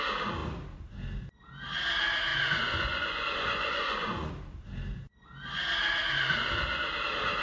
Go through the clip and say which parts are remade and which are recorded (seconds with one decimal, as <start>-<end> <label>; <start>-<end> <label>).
0.0-2.3 recorded; 2.3-4.3 remade; 4.3-7.4 recorded